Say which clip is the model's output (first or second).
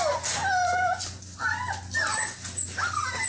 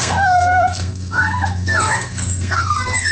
second